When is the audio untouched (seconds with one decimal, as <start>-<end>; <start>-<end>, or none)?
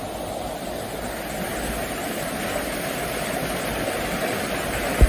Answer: 0.0-5.1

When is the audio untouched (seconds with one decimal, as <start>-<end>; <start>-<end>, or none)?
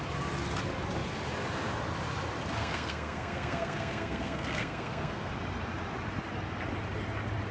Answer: 0.0-2.6; 5.3-7.5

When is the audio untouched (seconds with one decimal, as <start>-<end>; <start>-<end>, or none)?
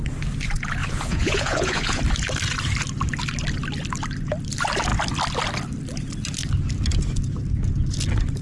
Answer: 0.0-0.8; 2.0-8.4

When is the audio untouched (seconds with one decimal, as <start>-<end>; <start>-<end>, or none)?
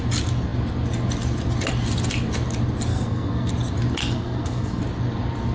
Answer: 0.0-2.9; 3.5-4.0; 4.8-5.5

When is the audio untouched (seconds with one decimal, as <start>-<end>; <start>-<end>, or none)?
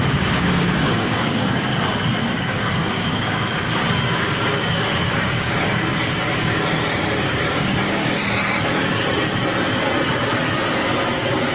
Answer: 1.7-2.4; 8.2-11.5